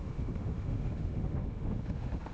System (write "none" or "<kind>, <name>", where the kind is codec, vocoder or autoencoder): autoencoder, DAC-VAE